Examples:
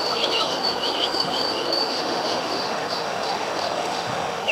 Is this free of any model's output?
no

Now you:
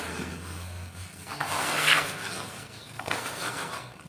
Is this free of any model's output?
no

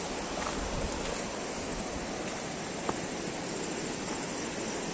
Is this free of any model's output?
yes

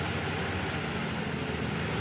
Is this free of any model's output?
yes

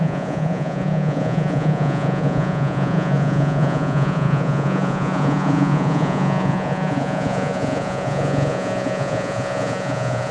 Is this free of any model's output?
no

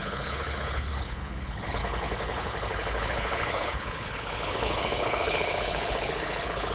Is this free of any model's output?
no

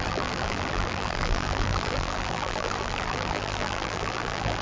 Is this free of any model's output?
no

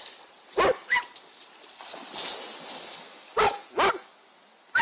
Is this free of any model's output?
yes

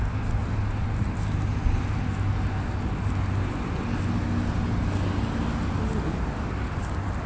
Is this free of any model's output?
yes